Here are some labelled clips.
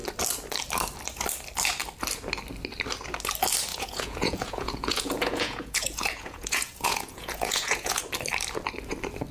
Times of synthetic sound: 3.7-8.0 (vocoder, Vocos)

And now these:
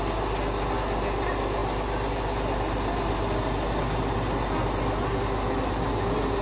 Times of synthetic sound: none

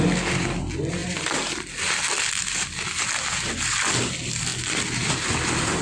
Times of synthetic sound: none

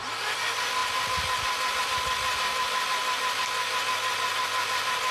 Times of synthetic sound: none

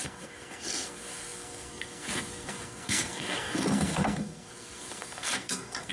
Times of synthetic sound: 0.0-5.9 (codec, SNAC)

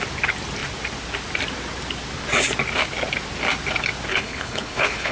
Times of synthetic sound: 4.1-5.1 (codec, HILCodec)

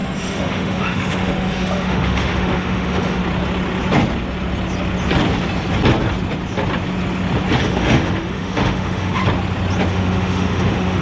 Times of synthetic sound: 0.0-3.2 (autoencoder, DAC-VAE); 7.6-9.2; 9.9-11.0

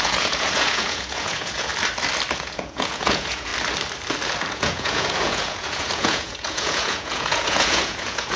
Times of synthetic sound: 0.0-1.7 (vocoder, Vocos); 2.3-3.5; 4.5-8.4